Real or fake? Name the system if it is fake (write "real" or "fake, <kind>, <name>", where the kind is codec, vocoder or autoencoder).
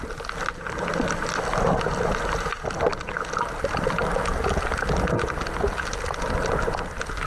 real